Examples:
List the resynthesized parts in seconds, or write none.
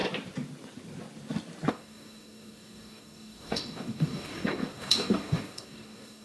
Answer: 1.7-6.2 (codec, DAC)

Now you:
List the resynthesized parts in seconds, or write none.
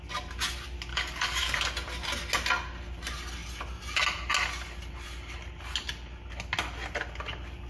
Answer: 0.9-1.6 (codec, DAC)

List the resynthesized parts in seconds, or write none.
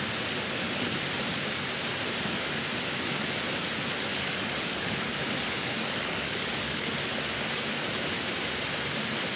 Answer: 4.1-6.9 (codec, DAC)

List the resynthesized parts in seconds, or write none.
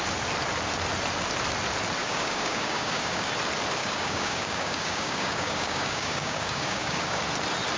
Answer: 2.0-3.3 (codec, DAC); 3.8-7.2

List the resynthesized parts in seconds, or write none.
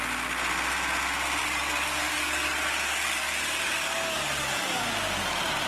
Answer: 1.4-4.8 (codec, DAC)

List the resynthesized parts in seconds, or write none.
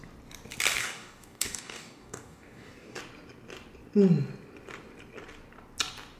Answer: 0.8-3.0 (codec, DAC)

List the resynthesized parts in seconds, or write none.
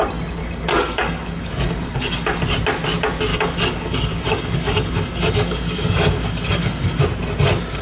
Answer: 0.4-2.4 (codec, DAC); 3.3-7.0